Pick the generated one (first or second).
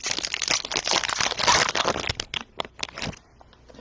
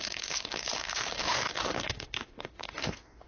second